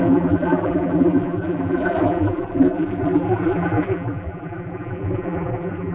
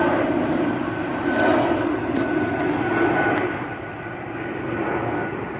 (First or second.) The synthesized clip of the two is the first